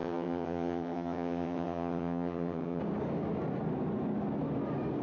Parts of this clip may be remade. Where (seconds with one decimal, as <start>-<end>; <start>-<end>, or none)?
0.0-2.8